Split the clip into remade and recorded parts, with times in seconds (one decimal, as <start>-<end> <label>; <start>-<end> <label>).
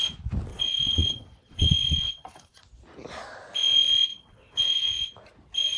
0.0-0.5 recorded; 0.5-2.6 remade; 2.6-4.1 recorded; 4.1-4.9 remade; 4.9-5.8 recorded